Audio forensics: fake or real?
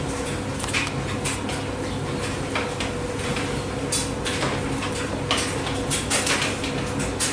real